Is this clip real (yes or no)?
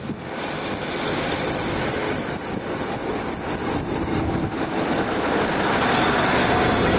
yes